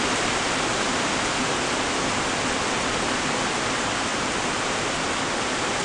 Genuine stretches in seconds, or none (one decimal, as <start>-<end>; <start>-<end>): 0.0-4.1; 4.9-5.8